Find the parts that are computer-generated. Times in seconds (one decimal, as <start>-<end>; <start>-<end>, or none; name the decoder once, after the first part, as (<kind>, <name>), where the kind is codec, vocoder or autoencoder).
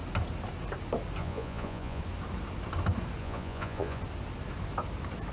1.2-2.0 (vocoder, Vocos); 3.2-4.0